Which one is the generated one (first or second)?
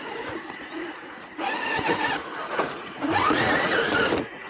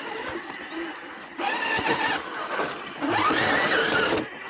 first